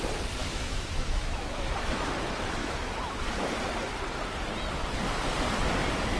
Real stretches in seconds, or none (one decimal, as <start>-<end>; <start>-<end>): 0.0-0.4; 2.1-2.6; 3.2-6.2